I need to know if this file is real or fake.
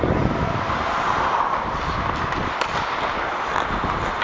real